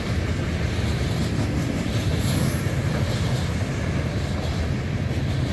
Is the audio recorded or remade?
recorded